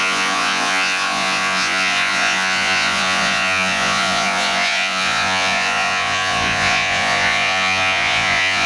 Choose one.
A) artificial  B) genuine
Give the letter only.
A